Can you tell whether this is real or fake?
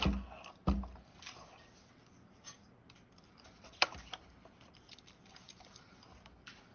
real